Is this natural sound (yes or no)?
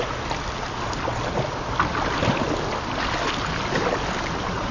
yes